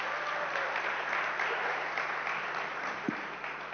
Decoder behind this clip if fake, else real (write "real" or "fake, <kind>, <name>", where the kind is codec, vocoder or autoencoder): real